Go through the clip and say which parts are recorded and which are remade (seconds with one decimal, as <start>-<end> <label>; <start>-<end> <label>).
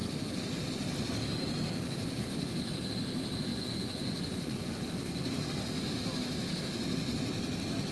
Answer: 0.0-3.5 recorded; 3.5-4.9 remade; 4.9-7.9 recorded